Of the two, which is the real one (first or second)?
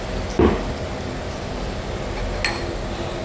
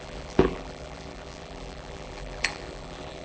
first